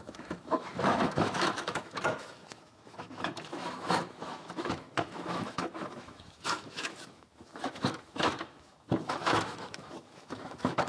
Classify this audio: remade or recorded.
remade